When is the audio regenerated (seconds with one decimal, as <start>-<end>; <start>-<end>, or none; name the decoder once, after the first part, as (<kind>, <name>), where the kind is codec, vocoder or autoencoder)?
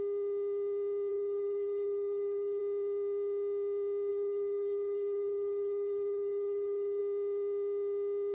1.1-2.6 (codec, HILCodec); 4.1-7.0